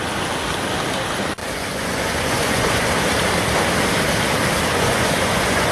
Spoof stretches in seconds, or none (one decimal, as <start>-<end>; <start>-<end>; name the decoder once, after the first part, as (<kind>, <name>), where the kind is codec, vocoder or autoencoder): 1.4-2.9 (vocoder, Vocos); 4.7-5.7